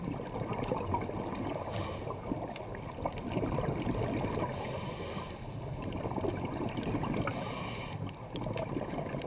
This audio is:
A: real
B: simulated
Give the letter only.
A